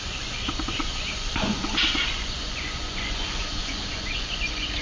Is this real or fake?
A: fake